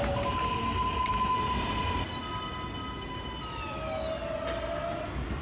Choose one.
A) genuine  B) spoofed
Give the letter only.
A